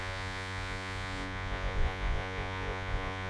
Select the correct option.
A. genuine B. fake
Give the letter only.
B